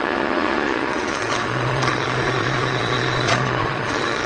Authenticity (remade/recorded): remade